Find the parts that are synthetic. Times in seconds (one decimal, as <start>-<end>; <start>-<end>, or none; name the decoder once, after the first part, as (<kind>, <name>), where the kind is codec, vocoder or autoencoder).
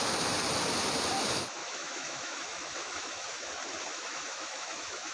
1.6-3.5 (autoencoder, DAC-VAE); 3.9-5.1